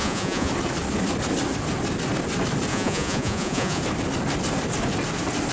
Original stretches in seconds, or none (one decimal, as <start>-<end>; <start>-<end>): 0.5-2.7; 3.8-5.5